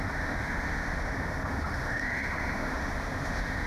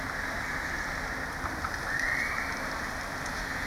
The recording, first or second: second